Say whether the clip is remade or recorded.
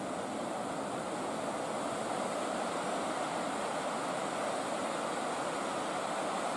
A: recorded